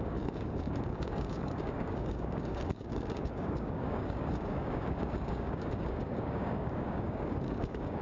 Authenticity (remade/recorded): remade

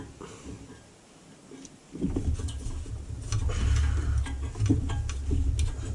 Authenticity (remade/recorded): recorded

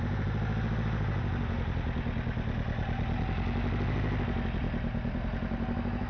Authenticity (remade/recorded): recorded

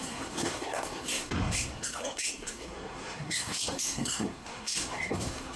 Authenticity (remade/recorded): remade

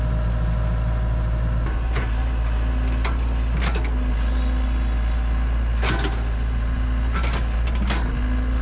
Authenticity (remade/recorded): recorded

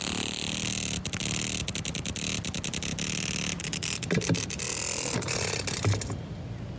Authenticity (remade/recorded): recorded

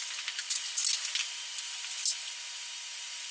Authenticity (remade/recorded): recorded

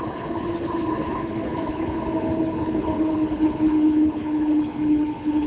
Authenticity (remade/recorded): remade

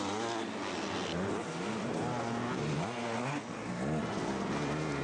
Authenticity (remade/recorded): recorded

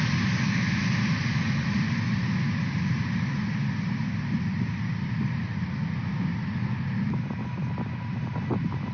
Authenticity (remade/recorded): remade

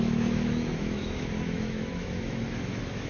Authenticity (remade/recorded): remade